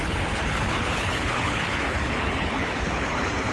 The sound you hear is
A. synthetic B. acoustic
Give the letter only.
A